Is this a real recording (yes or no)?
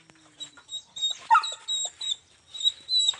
yes